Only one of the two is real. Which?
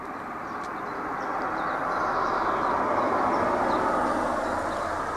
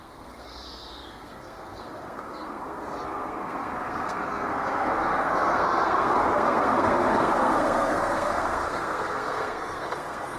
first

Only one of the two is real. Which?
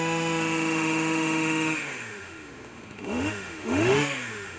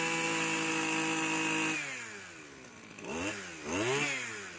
second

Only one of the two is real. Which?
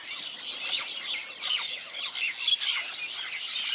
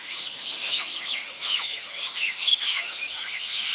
first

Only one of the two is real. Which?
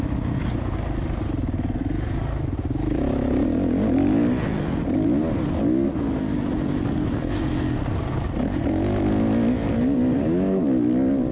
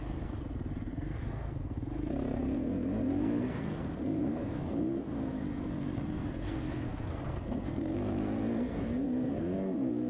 first